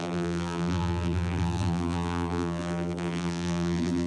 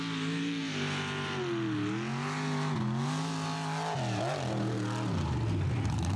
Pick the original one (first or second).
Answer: second